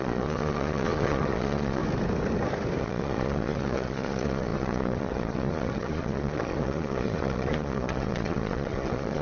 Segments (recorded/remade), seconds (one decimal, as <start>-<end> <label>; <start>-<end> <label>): 0.0-1.8 remade; 1.8-2.8 recorded; 2.8-9.2 remade